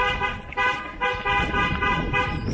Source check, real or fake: real